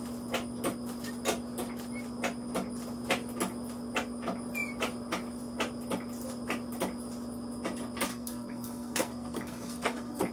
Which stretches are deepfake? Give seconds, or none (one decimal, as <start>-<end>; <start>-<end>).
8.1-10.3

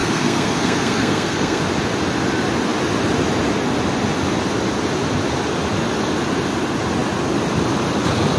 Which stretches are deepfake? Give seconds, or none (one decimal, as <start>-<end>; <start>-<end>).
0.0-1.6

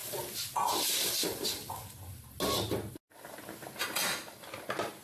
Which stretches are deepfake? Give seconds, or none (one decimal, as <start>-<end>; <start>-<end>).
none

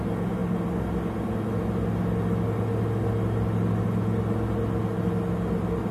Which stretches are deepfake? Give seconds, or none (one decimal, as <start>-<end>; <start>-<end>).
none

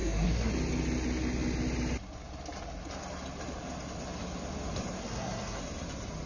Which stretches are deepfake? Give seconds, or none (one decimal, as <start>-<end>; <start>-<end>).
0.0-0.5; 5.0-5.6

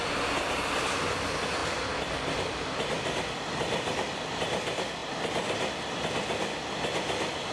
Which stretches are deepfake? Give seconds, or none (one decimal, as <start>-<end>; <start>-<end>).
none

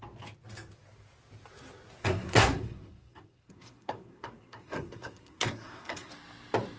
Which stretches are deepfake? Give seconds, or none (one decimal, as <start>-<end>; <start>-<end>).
2.0-6.1